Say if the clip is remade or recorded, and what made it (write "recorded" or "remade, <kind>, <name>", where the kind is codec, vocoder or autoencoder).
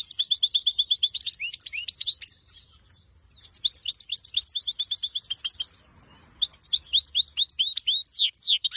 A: recorded